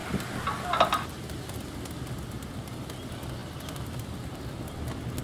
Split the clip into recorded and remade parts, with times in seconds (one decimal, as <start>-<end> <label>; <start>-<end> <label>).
0.0-5.2 recorded